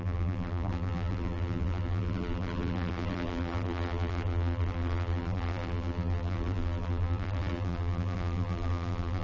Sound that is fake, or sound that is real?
fake